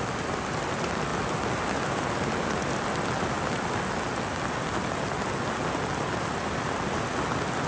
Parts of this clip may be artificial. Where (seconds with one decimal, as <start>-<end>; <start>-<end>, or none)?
none